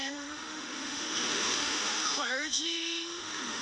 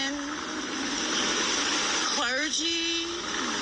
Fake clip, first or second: first